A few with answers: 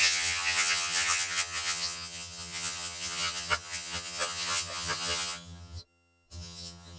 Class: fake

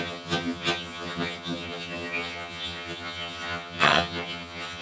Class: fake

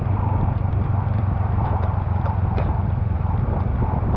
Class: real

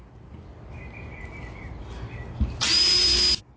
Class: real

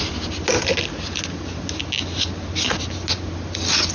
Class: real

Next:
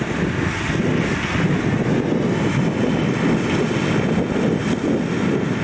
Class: real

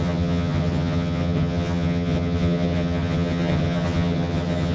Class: fake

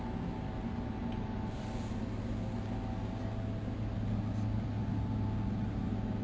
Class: real